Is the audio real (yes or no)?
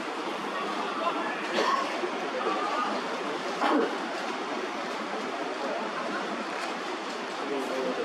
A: no